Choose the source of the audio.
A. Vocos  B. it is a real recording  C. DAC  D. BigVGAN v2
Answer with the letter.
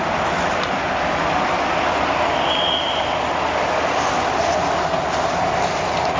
B